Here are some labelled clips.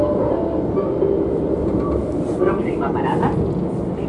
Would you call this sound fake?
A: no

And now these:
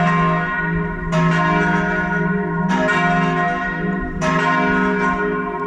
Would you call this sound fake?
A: no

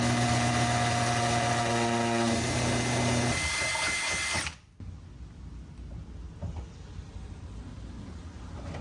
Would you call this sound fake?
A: no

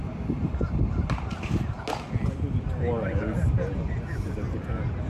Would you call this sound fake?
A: no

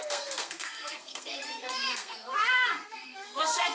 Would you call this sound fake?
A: yes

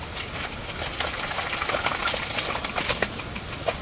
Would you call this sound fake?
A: no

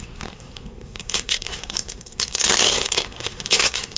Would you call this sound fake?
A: yes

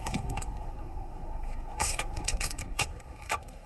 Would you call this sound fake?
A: yes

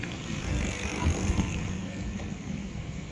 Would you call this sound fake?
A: yes